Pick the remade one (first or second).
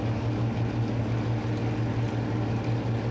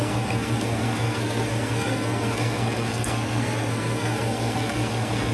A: second